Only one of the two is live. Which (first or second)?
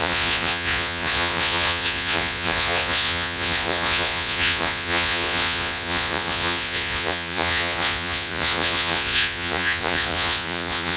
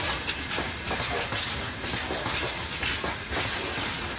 second